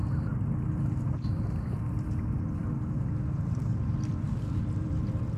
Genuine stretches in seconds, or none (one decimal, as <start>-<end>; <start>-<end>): 3.1-4.1; 5.0-5.4